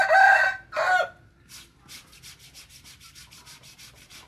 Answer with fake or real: real